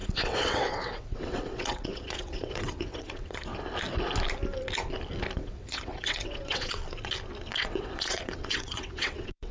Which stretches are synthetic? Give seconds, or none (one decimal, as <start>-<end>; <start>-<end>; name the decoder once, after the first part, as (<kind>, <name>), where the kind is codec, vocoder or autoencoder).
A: 0.0-3.5 (vocoder, WaveNeXt); 5.4-6.8; 7.5-9.5